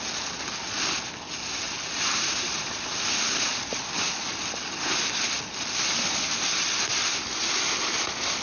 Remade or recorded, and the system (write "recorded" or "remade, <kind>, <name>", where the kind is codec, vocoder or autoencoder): recorded